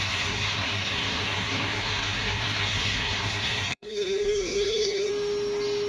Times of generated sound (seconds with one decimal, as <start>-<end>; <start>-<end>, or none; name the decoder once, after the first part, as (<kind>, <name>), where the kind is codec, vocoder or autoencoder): 0.0-5.1 (codec, SNAC)